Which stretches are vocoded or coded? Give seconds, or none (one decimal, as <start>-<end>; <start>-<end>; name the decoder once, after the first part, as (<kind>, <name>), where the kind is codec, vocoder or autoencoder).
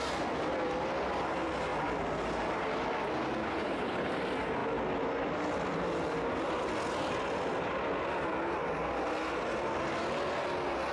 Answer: 3.4-4.1 (codec, HILCodec)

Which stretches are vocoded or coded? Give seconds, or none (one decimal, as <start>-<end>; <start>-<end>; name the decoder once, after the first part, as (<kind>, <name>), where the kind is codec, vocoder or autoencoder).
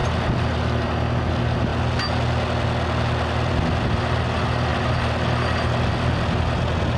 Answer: none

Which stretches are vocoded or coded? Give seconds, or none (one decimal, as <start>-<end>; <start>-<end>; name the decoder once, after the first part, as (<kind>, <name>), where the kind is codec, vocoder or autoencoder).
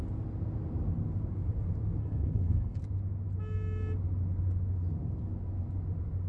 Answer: 2.0-2.8 (codec, HILCodec)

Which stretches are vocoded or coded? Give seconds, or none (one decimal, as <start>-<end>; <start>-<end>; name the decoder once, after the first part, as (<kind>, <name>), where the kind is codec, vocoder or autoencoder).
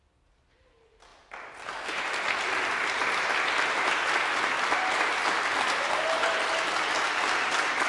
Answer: none